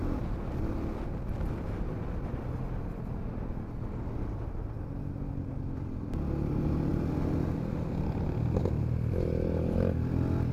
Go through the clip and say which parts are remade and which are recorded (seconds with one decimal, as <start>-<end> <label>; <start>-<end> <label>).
0.0-10.5 recorded